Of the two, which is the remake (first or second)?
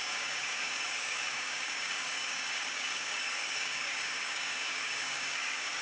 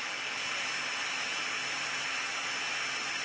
first